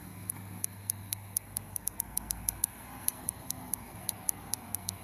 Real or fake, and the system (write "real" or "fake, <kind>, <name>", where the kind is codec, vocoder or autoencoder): fake, codec, SNAC